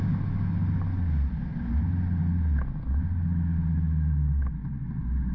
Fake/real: real